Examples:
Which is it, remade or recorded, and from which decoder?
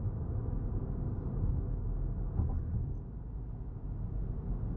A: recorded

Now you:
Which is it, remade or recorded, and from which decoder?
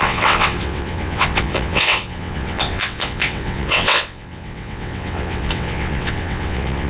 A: remade, vocoder, WaveNeXt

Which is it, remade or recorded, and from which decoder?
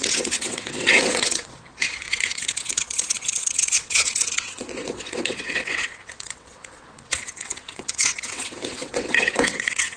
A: remade, vocoder, WaveNeXt